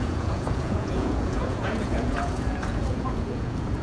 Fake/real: fake